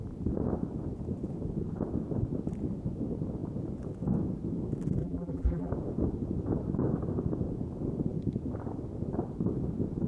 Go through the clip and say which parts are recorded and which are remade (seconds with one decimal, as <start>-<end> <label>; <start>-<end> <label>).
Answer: 0.0-5.0 recorded; 5.0-5.7 remade; 5.7-10.1 recorded